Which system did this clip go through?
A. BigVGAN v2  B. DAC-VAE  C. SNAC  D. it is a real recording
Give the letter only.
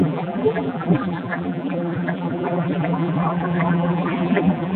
A